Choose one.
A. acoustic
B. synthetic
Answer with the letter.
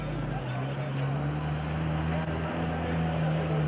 A